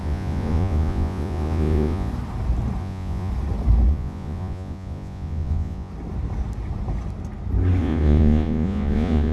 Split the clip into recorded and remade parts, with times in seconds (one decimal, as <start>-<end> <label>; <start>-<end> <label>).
0.0-2.1 remade; 2.1-2.8 recorded; 2.8-3.3 remade; 3.3-3.9 recorded; 3.9-5.9 remade; 5.9-7.8 recorded; 7.8-9.3 remade